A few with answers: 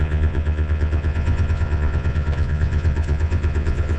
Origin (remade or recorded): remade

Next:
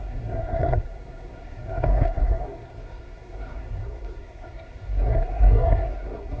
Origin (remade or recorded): remade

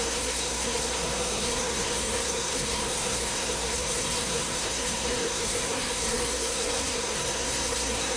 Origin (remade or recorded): remade